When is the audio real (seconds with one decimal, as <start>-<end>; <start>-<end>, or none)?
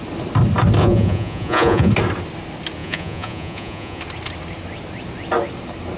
0.0-0.8; 1.9-2.8; 4.0-6.0